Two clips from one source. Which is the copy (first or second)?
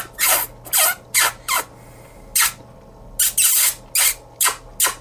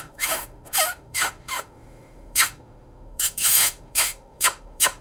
second